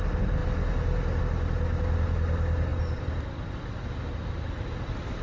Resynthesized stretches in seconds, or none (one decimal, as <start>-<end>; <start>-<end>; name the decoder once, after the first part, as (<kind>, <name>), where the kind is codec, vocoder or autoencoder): none